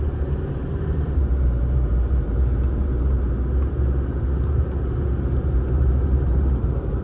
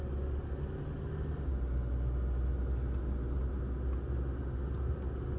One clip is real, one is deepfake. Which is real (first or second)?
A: second